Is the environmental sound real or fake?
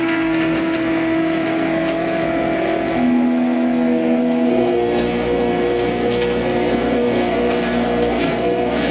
fake